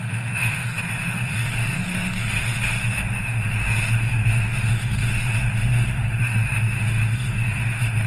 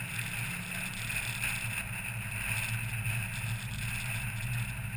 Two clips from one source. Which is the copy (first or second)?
first